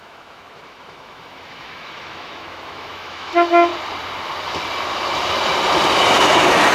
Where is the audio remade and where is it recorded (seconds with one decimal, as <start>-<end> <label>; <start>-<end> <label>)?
0.0-3.7 remade; 3.7-6.7 recorded